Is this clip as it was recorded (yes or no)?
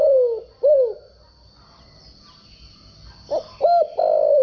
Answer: yes